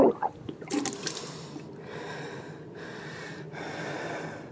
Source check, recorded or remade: recorded